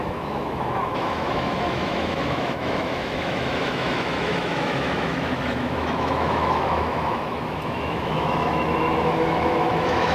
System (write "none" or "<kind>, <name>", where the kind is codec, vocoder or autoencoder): autoencoder, DAC-VAE